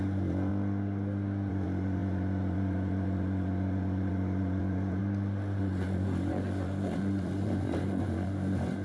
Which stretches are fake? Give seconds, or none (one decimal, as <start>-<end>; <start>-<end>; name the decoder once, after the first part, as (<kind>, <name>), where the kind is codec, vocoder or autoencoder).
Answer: 0.0-0.5 (vocoder, Vocos); 1.5-5.0; 5.6-8.8